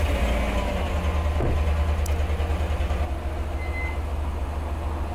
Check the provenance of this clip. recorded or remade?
recorded